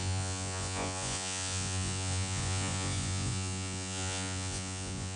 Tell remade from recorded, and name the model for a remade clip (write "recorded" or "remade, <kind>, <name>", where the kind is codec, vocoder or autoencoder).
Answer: remade, vocoder, Vocos